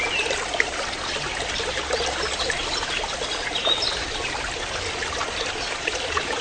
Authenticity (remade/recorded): recorded